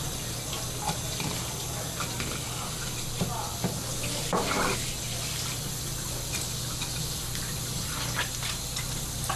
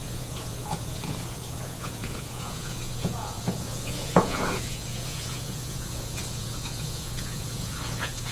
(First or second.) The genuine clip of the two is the first